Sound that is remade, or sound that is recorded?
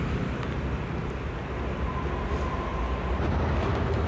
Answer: recorded